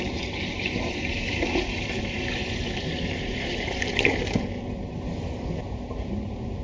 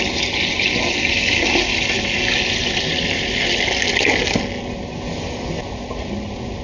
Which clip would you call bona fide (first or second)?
second